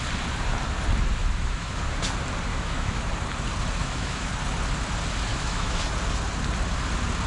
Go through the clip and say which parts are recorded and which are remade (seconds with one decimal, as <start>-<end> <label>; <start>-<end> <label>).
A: 0.0-1.2 recorded; 1.2-1.8 remade; 1.8-2.5 recorded; 2.5-3.1 remade; 3.1-3.8 recorded; 3.8-4.3 remade; 4.3-5.3 recorded; 5.3-5.8 remade; 5.8-7.3 recorded